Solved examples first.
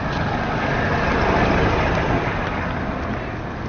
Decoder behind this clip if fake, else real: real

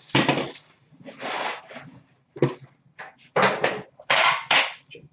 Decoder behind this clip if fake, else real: real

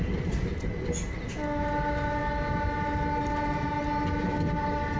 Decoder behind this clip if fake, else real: real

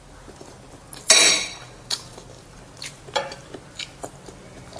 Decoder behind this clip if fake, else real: real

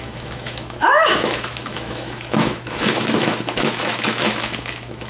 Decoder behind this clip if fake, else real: fake, autoencoder, DAC-VAE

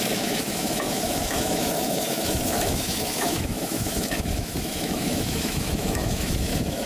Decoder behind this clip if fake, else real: fake, autoencoder, DAC-VAE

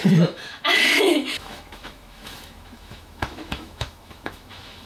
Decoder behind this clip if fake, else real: fake, autoencoder, DAC-VAE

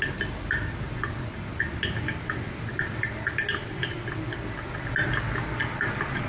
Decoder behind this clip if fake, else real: real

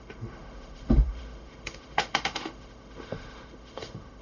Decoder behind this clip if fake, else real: fake, autoencoder, DAC-VAE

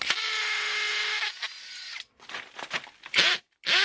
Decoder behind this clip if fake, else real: real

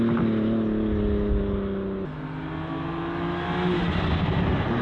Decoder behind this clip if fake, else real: real